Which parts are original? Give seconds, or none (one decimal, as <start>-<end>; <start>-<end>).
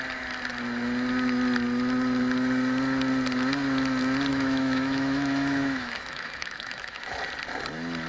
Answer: 0.0-4.3; 7.1-8.1